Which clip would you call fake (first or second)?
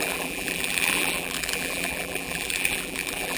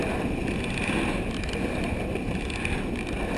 first